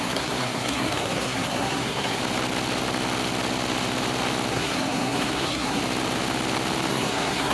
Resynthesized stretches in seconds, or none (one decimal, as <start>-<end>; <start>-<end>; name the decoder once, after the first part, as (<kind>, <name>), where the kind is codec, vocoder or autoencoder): 0.0-2.2 (codec, SNAC); 4.5-5.8; 6.9-7.5